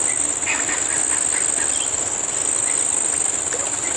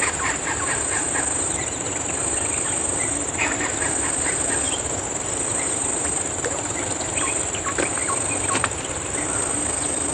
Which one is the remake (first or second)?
second